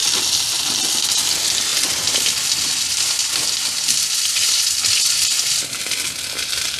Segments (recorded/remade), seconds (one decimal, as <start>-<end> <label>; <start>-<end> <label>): 0.0-1.7 recorded; 1.7-5.8 remade; 5.8-6.8 recorded